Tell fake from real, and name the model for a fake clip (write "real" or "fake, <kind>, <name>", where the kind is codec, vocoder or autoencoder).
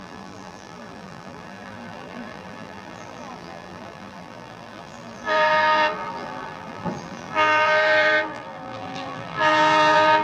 fake, vocoder, BigVGAN v2